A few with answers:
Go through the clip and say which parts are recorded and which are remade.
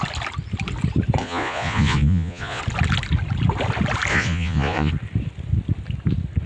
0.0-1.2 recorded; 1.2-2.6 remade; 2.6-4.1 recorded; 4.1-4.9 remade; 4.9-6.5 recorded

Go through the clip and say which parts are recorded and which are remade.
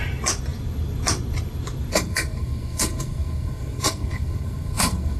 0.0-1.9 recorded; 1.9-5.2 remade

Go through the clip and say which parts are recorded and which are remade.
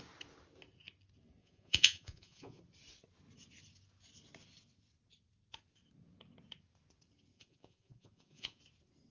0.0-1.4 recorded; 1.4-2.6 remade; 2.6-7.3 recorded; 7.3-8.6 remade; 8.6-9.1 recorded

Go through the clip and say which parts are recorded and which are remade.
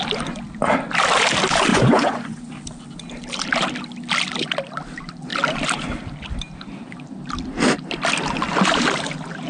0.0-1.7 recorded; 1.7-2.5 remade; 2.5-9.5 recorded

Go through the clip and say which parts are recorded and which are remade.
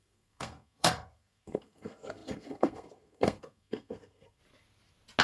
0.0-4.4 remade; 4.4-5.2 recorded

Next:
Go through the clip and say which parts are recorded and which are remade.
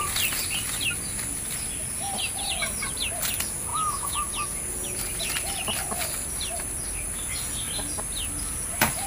0.0-3.7 recorded; 3.7-4.3 remade; 4.3-9.1 recorded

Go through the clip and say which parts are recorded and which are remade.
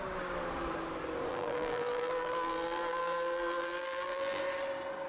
0.0-1.3 recorded; 1.3-4.4 remade; 4.4-5.1 recorded